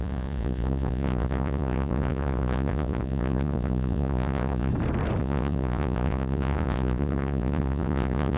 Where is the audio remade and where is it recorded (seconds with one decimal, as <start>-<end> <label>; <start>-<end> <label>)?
0.0-4.7 remade; 4.7-5.2 recorded; 5.2-8.4 remade